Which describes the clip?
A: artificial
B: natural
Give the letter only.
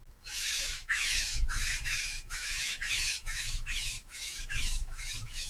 A